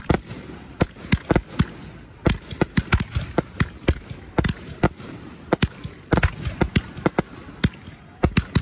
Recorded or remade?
recorded